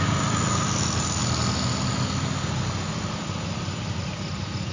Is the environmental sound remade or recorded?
recorded